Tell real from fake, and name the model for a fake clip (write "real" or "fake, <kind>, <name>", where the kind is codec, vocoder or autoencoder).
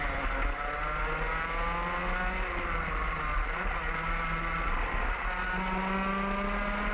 real